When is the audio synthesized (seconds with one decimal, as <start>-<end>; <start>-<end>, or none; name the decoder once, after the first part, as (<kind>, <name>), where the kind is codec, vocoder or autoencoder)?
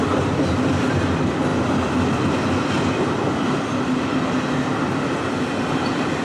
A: 0.0-1.5 (vocoder, BigVGAN v2); 2.9-6.2